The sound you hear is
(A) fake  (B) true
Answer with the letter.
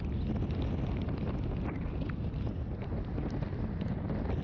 B